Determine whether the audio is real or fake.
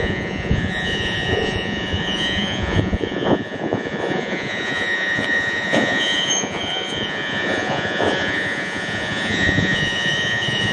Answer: fake